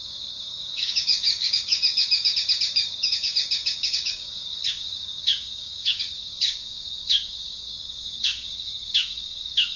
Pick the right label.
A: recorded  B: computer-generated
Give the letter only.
B